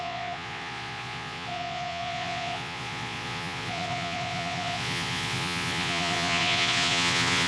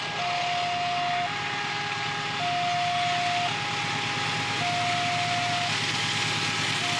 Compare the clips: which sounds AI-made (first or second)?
first